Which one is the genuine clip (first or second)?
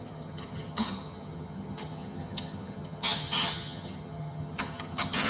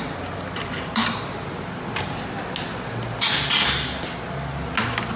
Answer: second